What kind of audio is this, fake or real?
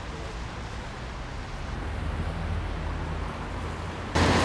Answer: real